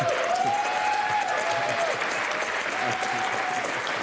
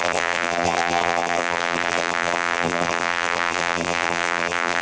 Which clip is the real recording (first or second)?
first